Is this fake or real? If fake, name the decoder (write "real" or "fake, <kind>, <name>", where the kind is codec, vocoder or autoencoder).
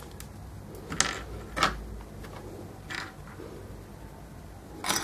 real